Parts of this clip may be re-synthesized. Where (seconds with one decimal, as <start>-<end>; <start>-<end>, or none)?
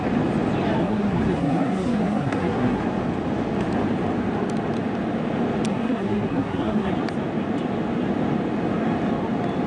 0.8-2.8; 5.7-6.9